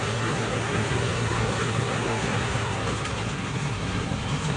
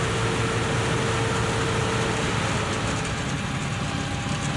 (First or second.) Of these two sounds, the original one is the second